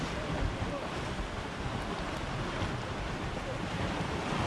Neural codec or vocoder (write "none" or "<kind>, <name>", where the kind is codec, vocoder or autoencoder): none